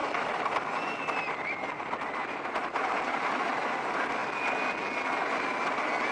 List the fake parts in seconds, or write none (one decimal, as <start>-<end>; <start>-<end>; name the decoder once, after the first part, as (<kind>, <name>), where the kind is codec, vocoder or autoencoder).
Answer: none